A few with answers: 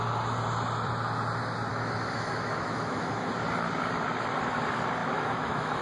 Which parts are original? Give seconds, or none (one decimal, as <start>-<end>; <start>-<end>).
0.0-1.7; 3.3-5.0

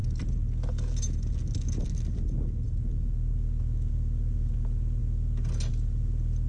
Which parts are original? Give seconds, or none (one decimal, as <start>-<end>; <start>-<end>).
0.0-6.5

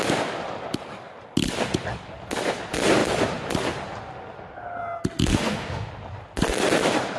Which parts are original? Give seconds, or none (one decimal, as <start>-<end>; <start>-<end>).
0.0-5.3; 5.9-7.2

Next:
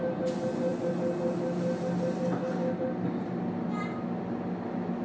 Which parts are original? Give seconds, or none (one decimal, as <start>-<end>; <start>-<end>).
0.0-5.0

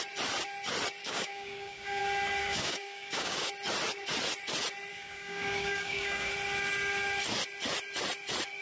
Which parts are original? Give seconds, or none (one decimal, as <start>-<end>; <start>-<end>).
0.0-1.0; 2.0-2.4; 3.5-4.9; 6.3-8.6